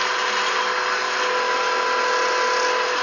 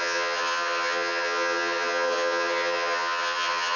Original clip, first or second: first